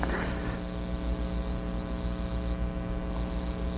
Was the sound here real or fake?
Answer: real